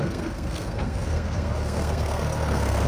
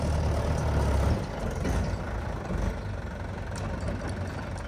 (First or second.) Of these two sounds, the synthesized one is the first